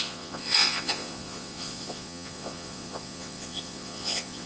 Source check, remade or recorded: remade